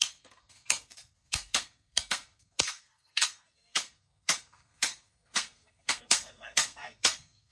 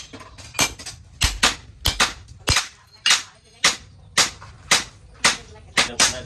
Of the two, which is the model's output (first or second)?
first